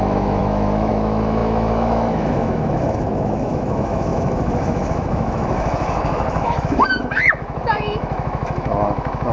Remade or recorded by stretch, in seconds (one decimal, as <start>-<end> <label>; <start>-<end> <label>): 0.0-9.3 remade